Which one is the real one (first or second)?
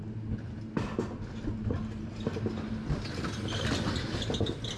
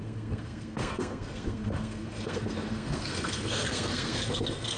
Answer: first